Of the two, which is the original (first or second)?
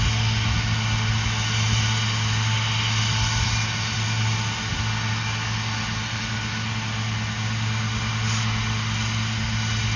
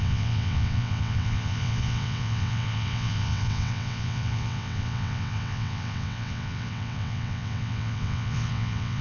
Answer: first